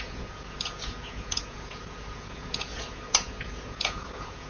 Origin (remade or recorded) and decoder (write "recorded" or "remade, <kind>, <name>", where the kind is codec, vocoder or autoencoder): remade, vocoder, Vocos